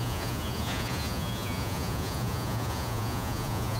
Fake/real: fake